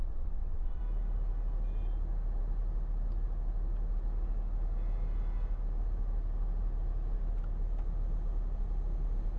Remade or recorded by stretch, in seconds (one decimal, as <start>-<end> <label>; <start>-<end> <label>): 0.0-0.8 remade; 0.8-9.4 recorded